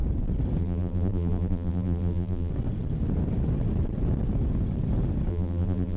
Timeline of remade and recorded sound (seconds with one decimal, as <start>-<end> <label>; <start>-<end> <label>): 0.0-0.6 recorded; 0.6-2.5 remade; 2.5-5.3 recorded; 5.3-6.0 remade